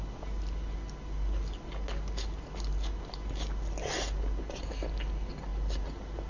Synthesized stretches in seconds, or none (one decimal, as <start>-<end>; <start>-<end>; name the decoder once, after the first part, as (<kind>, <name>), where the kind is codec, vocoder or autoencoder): none